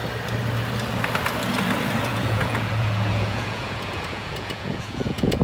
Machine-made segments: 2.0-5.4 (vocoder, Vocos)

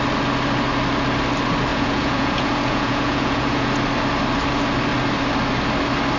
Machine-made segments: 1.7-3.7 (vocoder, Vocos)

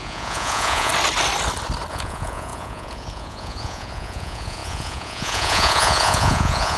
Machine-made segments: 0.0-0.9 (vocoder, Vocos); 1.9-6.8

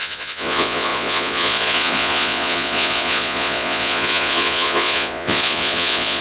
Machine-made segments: 0.0-6.2 (vocoder, Vocos)

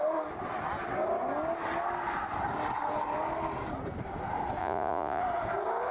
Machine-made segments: 4.6-5.2 (vocoder, Vocos)